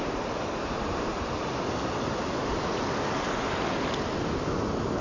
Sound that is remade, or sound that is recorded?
recorded